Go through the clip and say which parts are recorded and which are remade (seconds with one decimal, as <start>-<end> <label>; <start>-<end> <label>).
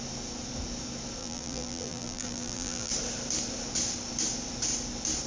0.0-1.2 recorded; 1.2-2.9 remade; 2.9-5.3 recorded